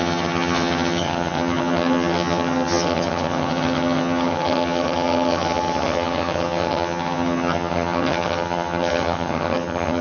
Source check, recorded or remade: remade